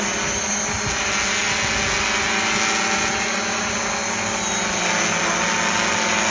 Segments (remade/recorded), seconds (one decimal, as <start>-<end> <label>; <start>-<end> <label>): 0.0-6.3 recorded